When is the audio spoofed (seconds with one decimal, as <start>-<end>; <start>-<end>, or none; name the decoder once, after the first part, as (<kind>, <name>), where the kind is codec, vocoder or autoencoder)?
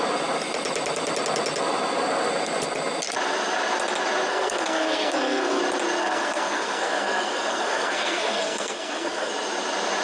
4.3-5.6 (codec, SNAC); 6.0-9.3